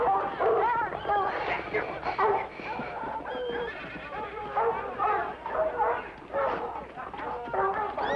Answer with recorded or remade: recorded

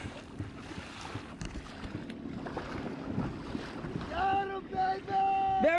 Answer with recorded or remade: recorded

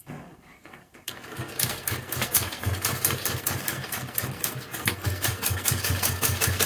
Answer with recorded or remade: remade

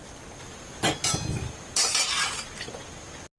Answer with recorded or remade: recorded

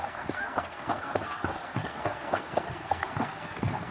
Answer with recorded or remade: remade